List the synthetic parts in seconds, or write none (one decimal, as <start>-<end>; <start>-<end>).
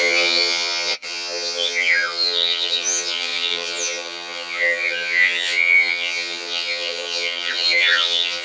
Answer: 0.0-8.4